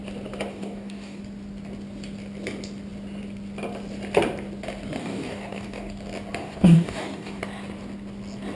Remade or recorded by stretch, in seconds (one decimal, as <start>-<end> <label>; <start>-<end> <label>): 0.0-0.5 recorded; 0.5-1.2 remade; 1.2-5.0 recorded; 5.0-5.9 remade; 5.9-6.4 recorded; 6.4-7.4 remade; 7.4-8.6 recorded